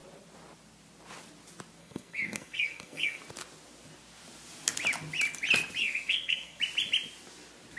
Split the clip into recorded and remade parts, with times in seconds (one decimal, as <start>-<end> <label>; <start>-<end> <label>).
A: 0.0-1.8 recorded; 1.8-3.2 remade; 3.2-5.8 recorded; 5.8-6.6 remade; 6.6-7.8 recorded